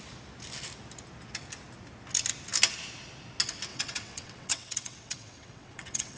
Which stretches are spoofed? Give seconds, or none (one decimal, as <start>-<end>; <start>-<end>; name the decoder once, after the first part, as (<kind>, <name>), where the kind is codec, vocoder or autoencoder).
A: 3.7-6.2 (vocoder, WaveNeXt)